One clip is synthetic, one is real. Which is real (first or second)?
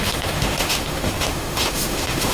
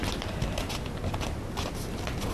second